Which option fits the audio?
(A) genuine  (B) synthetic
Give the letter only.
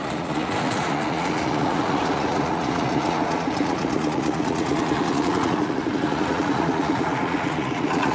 B